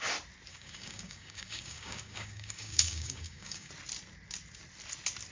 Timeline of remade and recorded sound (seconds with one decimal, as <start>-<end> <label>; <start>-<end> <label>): 0.0-0.5 recorded; 0.5-3.7 remade; 3.7-5.3 recorded